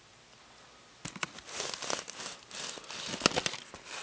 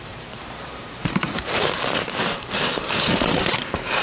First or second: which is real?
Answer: first